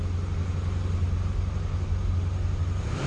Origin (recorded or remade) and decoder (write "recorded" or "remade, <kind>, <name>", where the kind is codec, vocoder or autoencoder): recorded